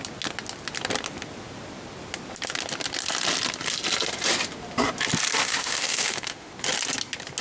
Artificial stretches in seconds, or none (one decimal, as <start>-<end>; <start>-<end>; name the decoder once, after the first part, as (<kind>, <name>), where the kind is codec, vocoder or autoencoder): 5.4-6.5 (autoencoder, DAC-VAE)